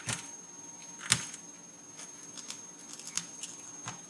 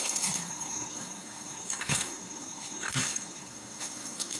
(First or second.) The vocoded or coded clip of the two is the second